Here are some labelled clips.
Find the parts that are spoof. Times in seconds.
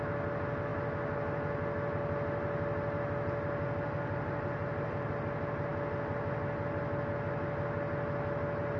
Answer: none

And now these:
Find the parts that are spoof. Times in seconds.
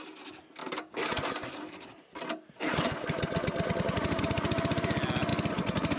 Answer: none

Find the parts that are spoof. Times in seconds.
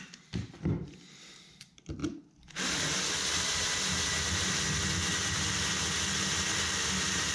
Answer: none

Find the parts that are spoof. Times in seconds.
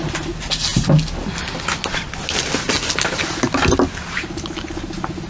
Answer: none